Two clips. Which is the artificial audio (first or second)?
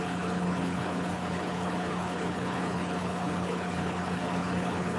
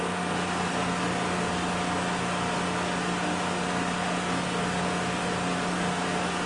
first